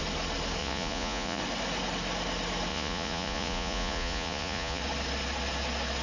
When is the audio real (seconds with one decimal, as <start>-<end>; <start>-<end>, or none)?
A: 0.0-0.6; 1.4-2.7; 4.8-6.0